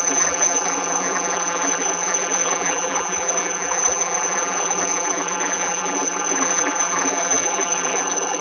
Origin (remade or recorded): remade